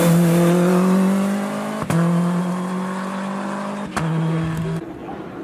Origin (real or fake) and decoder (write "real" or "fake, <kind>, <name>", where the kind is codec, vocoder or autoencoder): real